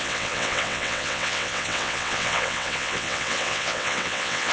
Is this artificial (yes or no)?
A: yes